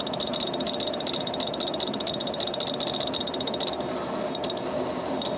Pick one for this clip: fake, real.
real